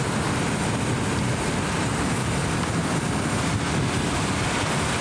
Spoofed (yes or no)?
no